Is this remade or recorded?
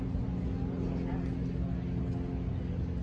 recorded